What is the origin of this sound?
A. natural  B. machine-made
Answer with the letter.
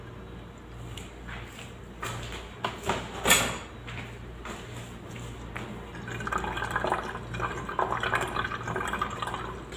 A